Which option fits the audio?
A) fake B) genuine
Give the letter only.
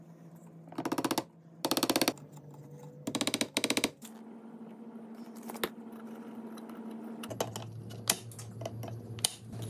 B